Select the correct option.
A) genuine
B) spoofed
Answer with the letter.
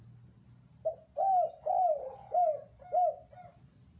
A